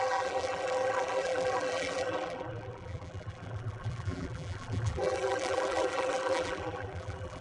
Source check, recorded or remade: remade